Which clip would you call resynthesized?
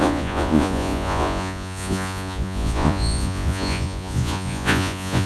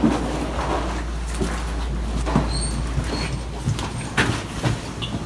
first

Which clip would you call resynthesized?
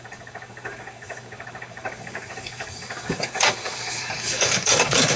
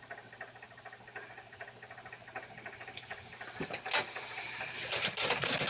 first